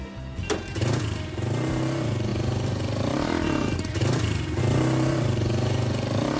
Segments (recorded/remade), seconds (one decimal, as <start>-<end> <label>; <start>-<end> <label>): 0.0-2.3 recorded; 2.3-4.6 remade; 4.6-6.4 recorded